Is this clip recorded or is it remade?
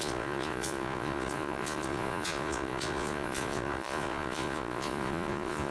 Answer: remade